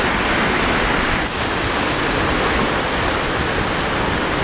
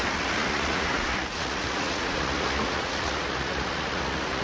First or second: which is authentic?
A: first